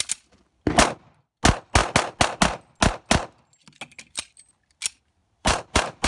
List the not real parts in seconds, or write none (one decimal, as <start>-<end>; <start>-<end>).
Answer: 5.2-6.1